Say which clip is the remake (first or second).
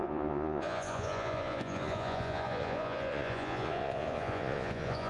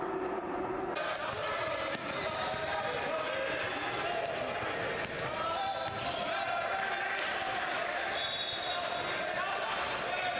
first